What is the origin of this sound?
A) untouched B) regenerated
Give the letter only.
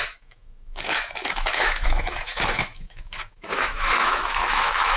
B